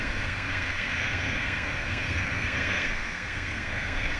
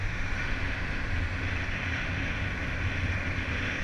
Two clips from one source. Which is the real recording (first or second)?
second